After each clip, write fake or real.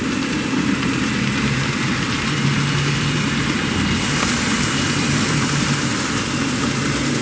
fake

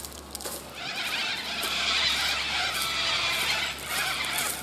real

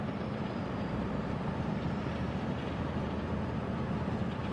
fake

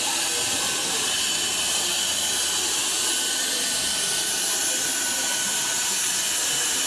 real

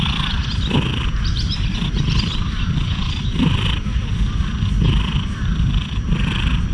real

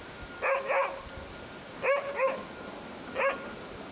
real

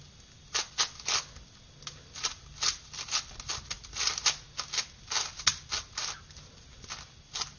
real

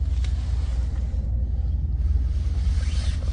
real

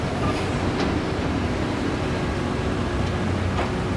real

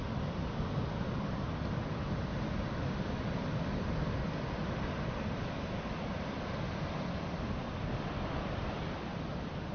real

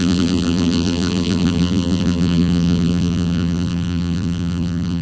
fake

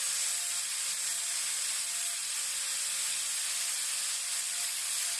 real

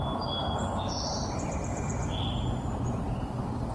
real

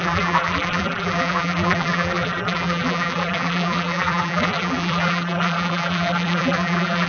fake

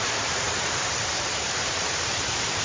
fake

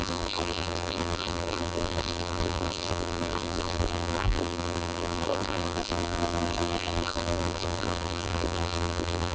fake